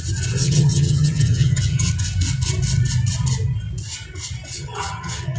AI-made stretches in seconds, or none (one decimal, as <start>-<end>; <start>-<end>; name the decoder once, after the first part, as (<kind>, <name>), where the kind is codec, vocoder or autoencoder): 0.4-1.9 (vocoder, HiFi-GAN); 4.5-5.4